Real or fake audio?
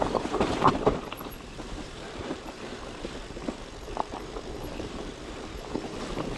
fake